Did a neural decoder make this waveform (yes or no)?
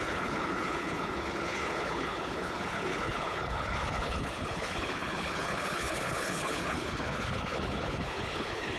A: yes